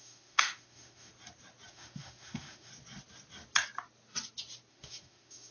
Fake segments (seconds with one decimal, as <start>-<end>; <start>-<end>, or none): 0.0-1.1; 1.7-2.7; 4.7-5.5